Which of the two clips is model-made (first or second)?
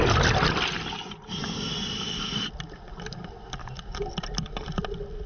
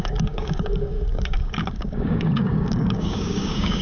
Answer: second